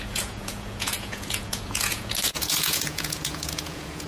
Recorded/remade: remade